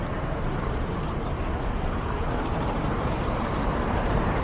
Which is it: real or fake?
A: fake